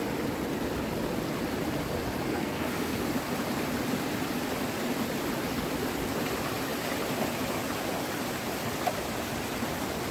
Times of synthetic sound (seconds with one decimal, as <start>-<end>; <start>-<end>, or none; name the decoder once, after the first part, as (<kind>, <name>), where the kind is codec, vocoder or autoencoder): 2.3-3.0 (codec, SNAC)